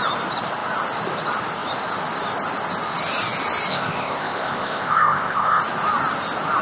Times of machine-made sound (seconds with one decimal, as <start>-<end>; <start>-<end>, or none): 3.7-5.6